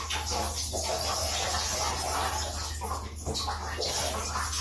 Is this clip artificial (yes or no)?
no